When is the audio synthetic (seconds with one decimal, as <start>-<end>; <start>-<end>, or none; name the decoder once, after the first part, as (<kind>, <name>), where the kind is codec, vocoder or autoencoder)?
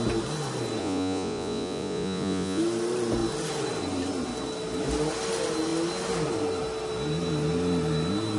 0.8-2.6 (vocoder, Vocos)